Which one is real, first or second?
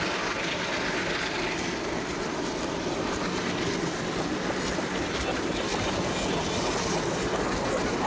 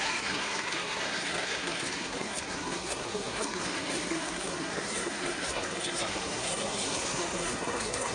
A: first